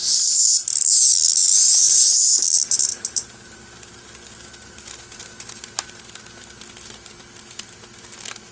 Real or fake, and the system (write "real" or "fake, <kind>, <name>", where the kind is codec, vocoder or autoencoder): real